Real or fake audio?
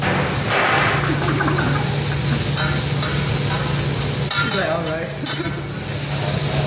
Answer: real